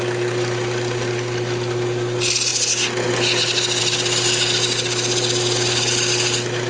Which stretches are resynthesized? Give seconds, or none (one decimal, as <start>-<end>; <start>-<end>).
none